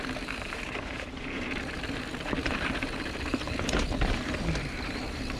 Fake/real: fake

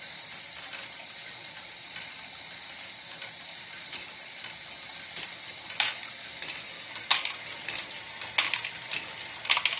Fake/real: real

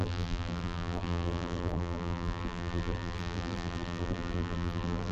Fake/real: fake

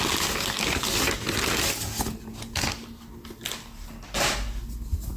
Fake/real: real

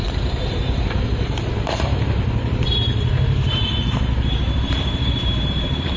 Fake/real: fake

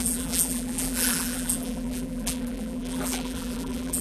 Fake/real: fake